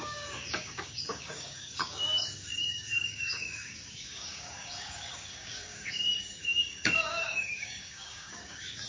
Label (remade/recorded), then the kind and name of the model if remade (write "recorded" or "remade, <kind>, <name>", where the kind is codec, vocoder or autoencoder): remade, codec, DAC